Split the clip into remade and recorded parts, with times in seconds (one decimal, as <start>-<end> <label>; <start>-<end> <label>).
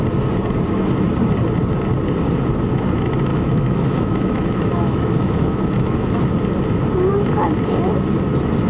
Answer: 0.0-3.3 recorded; 3.3-6.2 remade; 6.2-8.7 recorded